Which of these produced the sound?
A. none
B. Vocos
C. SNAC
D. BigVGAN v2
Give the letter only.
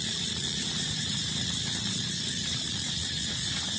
B